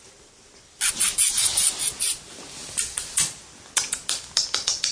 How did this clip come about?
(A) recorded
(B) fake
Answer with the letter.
A